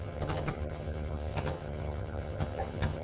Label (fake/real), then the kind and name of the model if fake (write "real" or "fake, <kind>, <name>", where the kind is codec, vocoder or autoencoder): fake, vocoder, HiFi-GAN